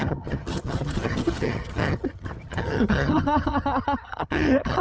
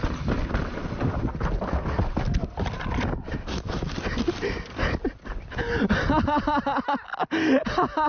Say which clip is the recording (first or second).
second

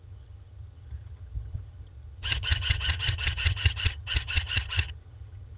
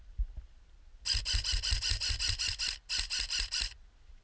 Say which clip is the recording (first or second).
second